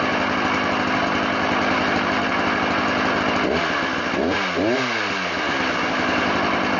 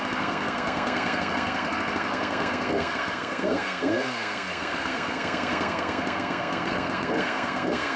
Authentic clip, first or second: first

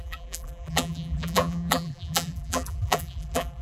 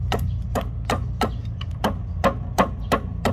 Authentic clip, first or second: second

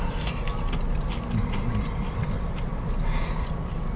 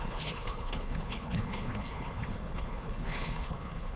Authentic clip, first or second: first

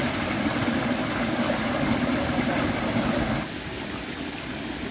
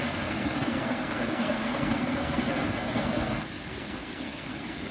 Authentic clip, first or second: first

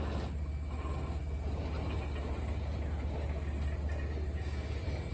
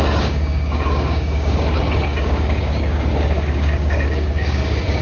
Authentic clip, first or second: first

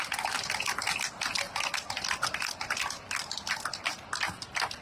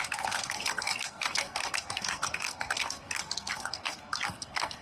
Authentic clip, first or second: first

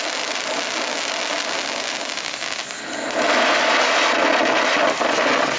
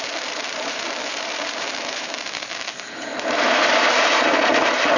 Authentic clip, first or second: first